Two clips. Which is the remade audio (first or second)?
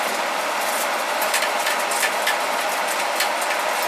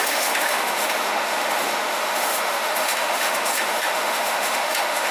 second